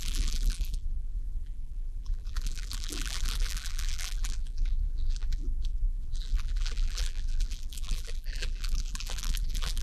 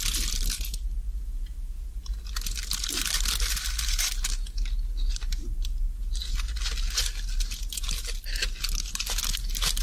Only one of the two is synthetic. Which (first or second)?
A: first